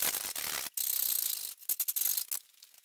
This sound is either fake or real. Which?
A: real